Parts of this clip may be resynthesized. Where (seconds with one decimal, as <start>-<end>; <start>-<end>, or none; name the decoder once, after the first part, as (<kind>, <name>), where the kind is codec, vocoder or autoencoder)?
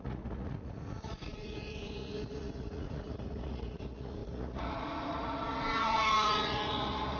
0.0-7.2 (vocoder, Vocos)